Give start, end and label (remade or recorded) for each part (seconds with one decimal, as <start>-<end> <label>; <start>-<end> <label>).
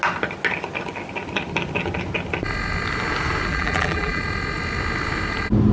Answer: 0.0-3.5 recorded; 3.5-4.2 remade; 4.2-5.7 recorded